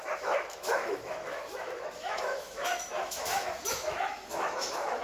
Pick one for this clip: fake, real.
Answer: fake